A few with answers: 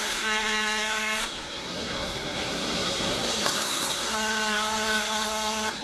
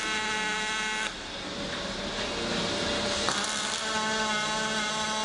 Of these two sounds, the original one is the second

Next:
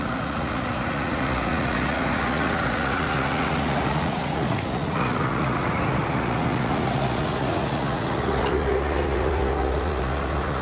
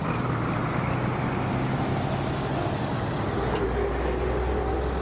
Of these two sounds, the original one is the second